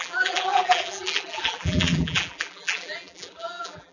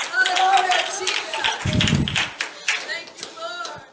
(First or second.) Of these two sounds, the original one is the second